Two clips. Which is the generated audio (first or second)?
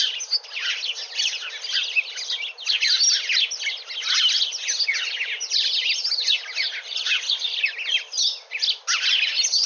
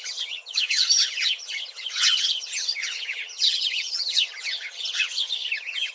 second